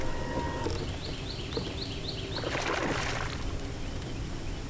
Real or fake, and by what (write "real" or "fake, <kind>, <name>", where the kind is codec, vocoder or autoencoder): real